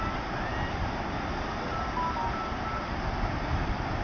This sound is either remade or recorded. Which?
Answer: recorded